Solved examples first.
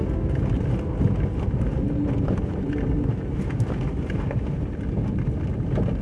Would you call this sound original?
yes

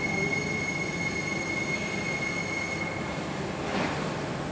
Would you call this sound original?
yes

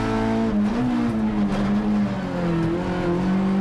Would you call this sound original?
yes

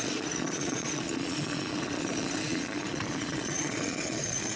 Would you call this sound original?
no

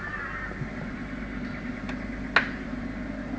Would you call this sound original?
yes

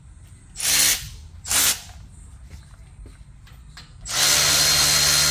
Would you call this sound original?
yes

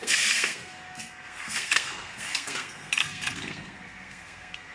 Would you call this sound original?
no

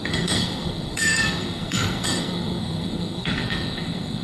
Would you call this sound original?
no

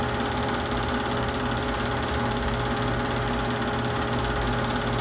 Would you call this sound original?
yes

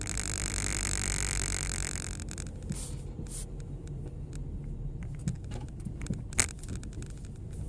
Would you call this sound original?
yes